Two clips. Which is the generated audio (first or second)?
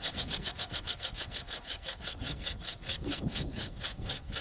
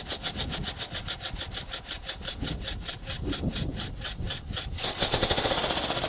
first